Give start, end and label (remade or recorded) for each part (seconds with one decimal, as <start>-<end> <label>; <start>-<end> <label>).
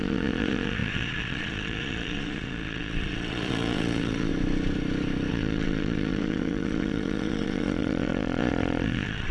0.0-4.3 remade; 4.3-5.3 recorded; 5.3-9.3 remade